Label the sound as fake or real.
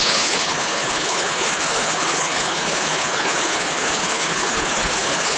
fake